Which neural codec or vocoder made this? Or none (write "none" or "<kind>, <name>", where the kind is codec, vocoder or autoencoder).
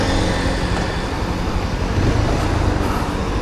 none